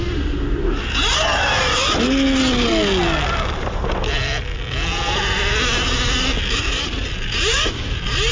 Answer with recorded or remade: recorded